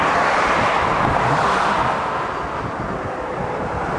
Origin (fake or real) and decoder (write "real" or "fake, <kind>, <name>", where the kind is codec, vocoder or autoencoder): real